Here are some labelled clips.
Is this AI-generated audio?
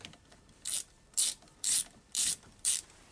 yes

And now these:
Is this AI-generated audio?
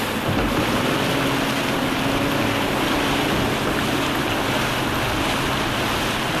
no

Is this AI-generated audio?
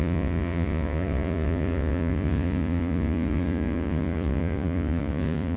yes